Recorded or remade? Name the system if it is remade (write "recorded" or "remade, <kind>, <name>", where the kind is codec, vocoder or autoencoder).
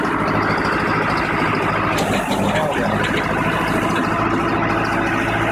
recorded